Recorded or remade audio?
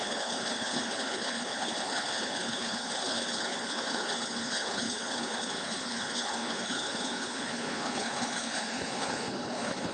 remade